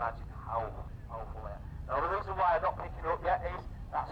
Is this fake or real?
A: fake